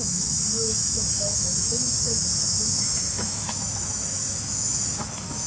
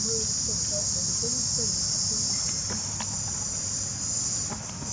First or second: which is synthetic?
first